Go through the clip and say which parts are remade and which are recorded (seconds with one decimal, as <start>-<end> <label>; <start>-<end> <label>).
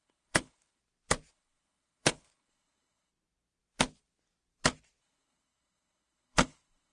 0.0-0.8 remade; 0.8-1.3 recorded; 1.3-3.1 remade; 3.1-5.0 recorded; 5.0-6.9 remade